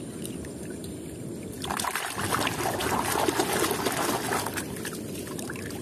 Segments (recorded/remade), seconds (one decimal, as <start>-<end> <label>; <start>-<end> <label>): 0.0-5.8 recorded